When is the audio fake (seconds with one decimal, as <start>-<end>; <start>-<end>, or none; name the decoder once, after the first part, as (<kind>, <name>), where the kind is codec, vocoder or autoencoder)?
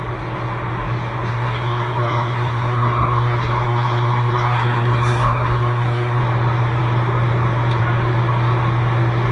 1.3-6.2 (codec, SNAC)